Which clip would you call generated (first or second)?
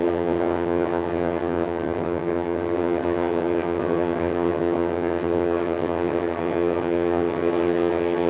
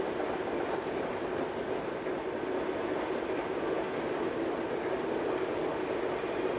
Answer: first